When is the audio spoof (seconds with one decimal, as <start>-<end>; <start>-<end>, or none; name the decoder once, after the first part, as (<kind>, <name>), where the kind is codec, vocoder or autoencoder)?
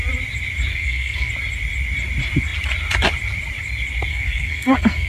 0.7-1.3 (codec, SNAC); 4.1-5.1